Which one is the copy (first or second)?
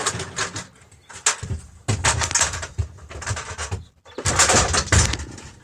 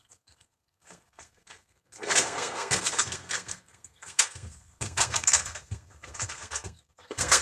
second